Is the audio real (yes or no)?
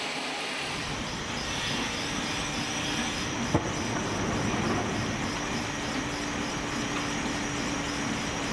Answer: yes